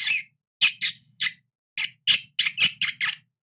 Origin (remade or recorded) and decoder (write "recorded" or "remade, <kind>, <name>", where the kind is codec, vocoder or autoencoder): recorded